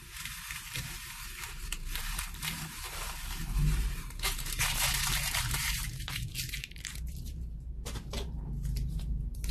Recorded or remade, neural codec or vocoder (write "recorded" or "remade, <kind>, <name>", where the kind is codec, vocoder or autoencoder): remade, vocoder, BigVGAN v2